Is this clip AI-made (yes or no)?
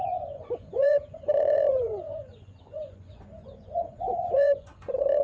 yes